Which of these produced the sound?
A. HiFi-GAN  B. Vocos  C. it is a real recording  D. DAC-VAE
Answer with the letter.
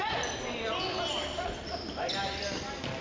C